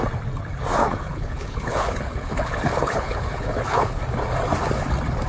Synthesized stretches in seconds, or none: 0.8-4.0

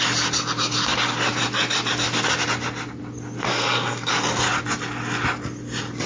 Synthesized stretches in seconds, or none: 3.5-4.1

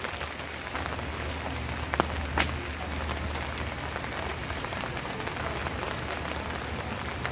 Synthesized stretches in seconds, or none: 4.3-5.1; 5.6-6.2

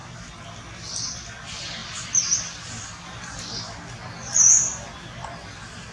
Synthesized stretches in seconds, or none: 1.8-3.9

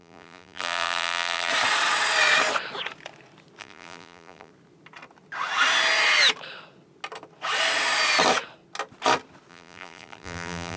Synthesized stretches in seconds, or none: 0.0-1.5; 3.6-4.5; 9.5-10.8

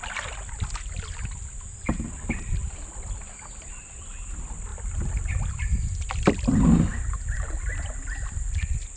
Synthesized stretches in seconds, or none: none